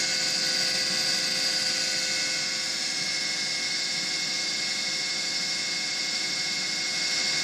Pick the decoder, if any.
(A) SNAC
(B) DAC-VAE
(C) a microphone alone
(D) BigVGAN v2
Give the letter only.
C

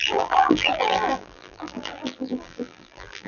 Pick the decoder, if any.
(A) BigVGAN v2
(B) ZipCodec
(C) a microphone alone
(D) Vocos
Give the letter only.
A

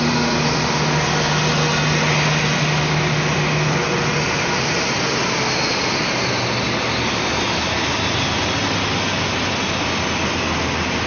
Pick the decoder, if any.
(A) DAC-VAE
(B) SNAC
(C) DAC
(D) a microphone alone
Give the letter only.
D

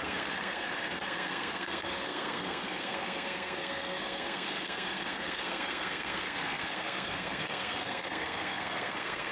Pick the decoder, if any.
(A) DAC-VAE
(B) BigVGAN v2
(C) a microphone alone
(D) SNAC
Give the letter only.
D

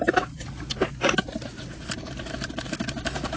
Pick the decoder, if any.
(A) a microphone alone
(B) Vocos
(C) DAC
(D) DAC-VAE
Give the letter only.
A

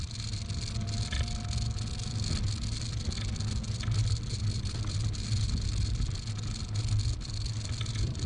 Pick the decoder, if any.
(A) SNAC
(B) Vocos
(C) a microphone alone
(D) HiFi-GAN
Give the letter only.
C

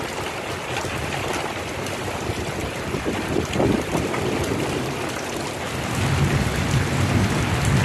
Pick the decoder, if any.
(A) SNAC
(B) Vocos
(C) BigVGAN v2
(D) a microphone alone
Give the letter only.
D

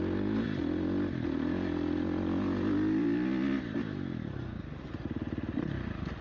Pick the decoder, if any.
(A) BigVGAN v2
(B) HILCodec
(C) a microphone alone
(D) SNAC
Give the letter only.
C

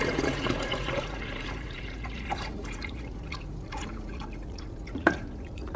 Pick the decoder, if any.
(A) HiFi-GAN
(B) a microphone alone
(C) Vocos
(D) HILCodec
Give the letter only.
C